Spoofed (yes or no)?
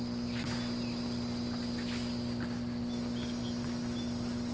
no